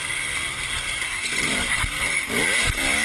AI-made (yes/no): no